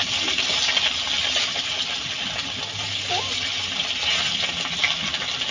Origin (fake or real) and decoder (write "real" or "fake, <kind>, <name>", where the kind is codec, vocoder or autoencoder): real